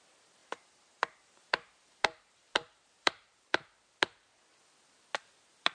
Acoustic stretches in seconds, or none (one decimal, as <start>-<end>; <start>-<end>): 0.0-0.4; 3.4-5.7